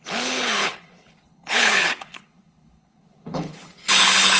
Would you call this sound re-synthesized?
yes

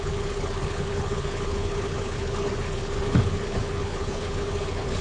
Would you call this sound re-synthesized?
yes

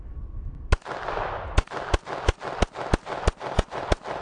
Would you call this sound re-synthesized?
no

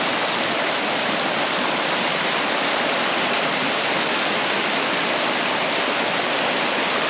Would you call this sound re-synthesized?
no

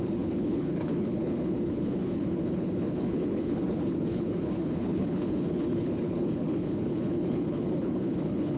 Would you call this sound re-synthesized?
yes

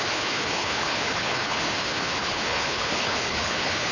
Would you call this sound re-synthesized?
yes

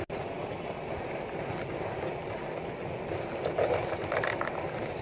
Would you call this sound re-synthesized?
no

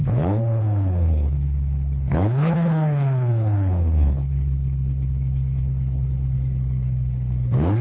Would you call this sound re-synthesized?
yes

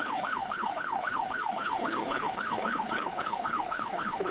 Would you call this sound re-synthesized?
yes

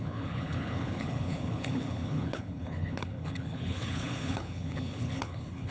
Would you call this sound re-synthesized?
yes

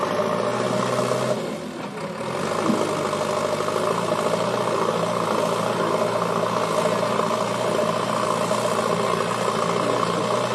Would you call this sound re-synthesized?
no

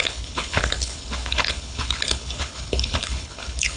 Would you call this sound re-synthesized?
yes